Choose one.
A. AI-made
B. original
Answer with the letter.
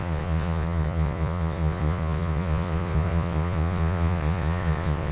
A